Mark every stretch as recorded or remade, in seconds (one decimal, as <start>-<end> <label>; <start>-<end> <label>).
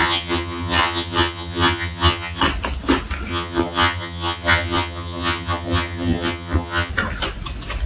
0.0-2.4 remade; 2.4-3.3 recorded; 3.3-6.9 remade; 6.9-7.9 recorded